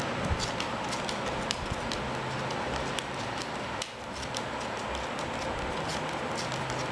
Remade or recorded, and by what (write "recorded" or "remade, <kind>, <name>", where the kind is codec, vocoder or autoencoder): recorded